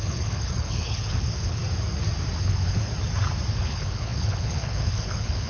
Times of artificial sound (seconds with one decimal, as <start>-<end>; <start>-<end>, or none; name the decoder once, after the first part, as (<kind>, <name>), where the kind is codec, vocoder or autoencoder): 0.0-1.6 (codec, HILCodec); 2.4-2.9; 3.5-5.5